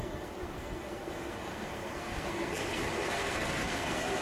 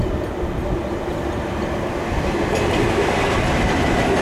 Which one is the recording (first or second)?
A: second